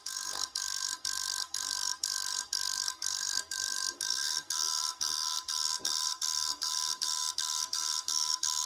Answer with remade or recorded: remade